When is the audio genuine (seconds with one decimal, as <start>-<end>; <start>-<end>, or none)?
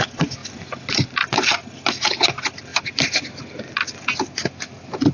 0.0-0.4; 0.9-5.1